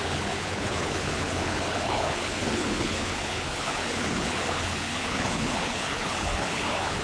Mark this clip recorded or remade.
remade